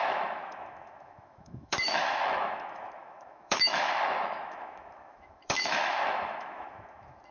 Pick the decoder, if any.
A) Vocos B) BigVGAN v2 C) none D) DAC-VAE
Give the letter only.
D